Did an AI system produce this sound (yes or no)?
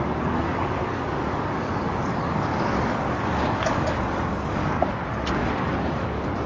yes